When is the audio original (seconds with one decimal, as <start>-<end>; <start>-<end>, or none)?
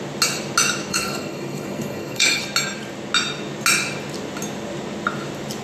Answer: 0.0-0.9; 2.4-5.6